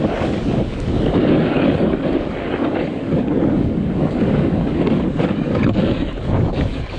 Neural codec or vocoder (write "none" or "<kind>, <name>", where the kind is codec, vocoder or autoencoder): codec, DAC